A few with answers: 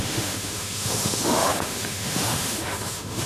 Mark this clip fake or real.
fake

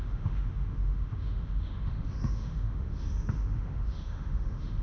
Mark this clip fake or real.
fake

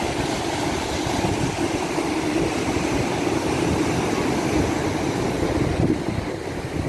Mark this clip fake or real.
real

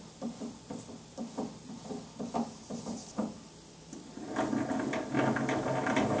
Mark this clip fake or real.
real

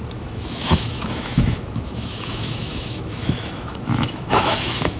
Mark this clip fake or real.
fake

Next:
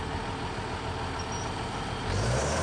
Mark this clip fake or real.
real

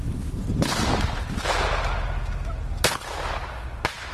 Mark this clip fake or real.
real